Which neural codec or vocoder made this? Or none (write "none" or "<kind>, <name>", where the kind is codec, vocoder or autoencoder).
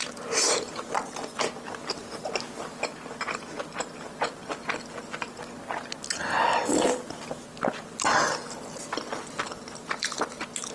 none